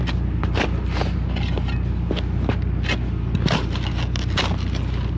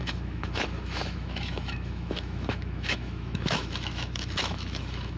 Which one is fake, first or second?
second